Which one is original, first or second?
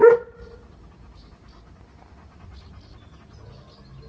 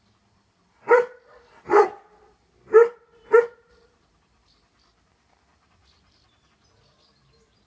first